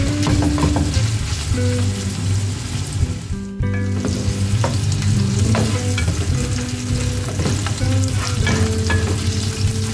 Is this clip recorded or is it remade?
recorded